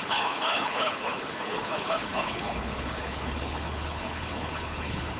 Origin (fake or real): fake